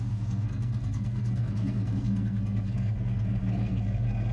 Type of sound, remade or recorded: remade